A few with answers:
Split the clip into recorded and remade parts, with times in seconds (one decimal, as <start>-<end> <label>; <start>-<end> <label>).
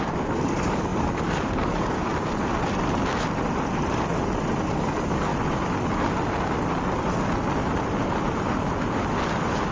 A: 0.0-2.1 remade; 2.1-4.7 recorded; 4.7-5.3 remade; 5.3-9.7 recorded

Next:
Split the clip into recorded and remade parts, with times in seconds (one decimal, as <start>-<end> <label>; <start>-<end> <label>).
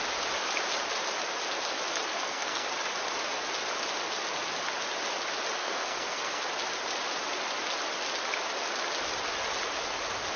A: 0.0-2.1 recorded; 2.1-2.7 remade; 2.7-5.6 recorded; 5.6-6.4 remade; 6.4-10.4 recorded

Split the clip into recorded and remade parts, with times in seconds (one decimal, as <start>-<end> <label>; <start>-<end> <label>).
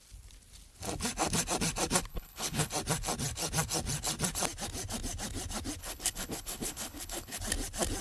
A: 0.0-2.1 recorded; 2.1-2.7 remade; 2.7-5.8 recorded; 5.8-7.4 remade; 7.4-8.0 recorded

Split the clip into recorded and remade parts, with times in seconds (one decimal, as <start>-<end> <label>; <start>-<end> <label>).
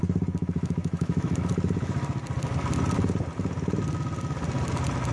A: 0.0-0.4 recorded; 0.4-1.5 remade; 1.5-5.1 recorded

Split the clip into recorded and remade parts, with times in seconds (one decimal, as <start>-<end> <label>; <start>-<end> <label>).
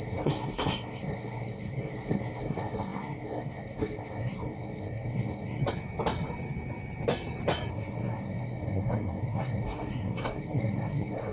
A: 0.0-5.6 remade; 5.6-7.7 recorded; 7.7-11.3 remade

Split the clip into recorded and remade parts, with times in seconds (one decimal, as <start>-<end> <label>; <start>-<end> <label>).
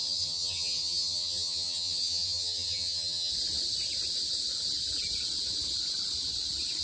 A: 0.0-3.3 remade; 3.3-6.8 recorded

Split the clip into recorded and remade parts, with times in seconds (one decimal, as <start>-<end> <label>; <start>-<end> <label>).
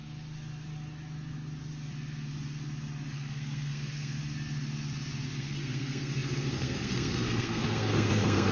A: 0.0-3.1 recorded; 3.1-4.2 remade; 4.2-5.4 recorded; 5.4-8.5 remade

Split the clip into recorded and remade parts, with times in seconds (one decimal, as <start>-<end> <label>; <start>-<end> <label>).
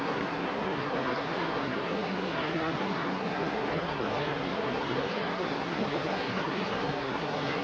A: 0.0-7.6 remade